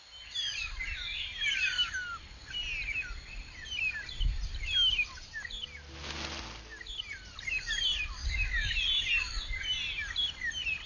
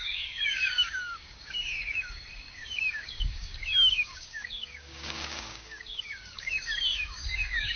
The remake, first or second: second